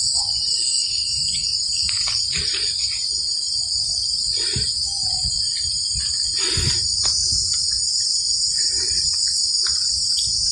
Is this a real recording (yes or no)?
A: yes